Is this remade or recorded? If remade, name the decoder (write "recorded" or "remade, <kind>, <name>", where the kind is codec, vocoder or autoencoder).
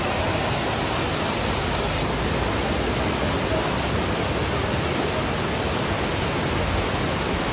recorded